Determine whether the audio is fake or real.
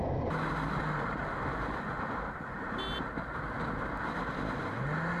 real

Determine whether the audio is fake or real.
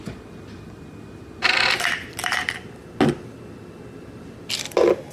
real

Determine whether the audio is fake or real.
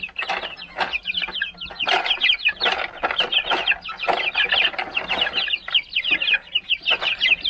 real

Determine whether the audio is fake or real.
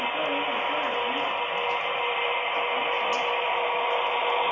real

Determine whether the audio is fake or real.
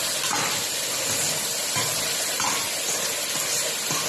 real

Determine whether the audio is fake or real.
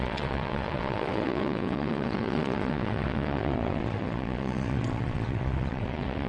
fake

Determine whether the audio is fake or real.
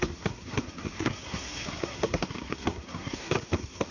fake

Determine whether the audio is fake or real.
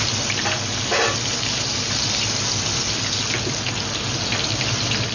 real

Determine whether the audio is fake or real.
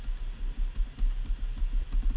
real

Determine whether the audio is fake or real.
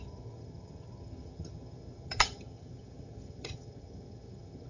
fake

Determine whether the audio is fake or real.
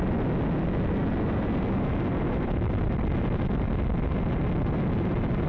real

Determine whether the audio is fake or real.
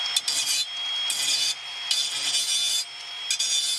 real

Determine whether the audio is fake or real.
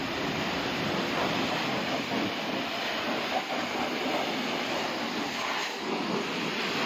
fake